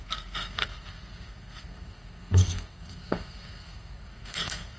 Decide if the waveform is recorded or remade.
remade